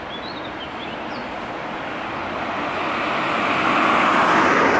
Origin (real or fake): real